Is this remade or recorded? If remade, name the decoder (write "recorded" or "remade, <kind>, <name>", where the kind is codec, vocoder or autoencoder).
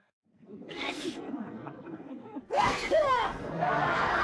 remade, codec, SNAC